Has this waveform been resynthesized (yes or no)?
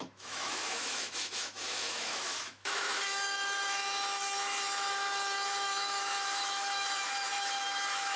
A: yes